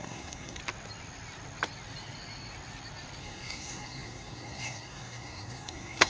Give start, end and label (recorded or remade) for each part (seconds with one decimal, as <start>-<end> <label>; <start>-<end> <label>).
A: 0.0-0.6 remade; 0.6-3.2 recorded; 3.2-6.1 remade